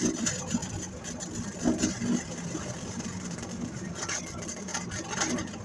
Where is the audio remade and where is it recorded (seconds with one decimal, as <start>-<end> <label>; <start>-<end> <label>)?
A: 0.0-5.6 recorded